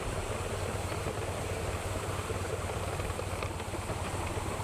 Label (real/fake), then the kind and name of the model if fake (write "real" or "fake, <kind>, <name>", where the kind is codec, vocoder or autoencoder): real